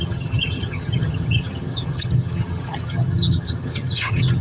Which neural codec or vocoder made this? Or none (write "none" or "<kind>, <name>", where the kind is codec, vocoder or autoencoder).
vocoder, HiFi-GAN